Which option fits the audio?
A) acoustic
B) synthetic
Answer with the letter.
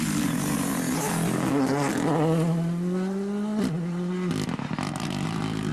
A